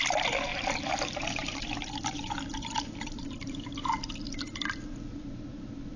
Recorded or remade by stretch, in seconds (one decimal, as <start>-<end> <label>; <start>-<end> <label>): 0.0-0.5 recorded; 0.5-4.1 remade; 4.1-6.0 recorded